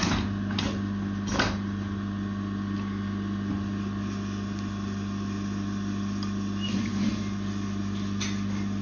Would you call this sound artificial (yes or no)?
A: no